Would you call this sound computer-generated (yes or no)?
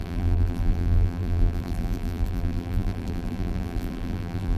yes